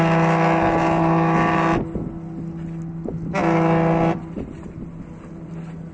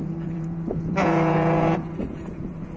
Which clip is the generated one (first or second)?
second